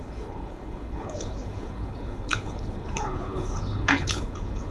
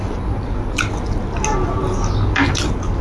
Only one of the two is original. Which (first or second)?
second